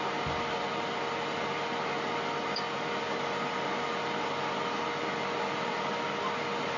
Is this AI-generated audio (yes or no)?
no